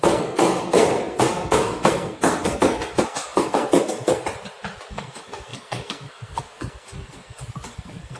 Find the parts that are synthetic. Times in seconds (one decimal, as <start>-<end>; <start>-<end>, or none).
0.0-4.2; 4.9-8.2